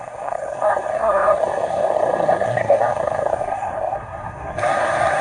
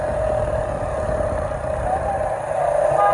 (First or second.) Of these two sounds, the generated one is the first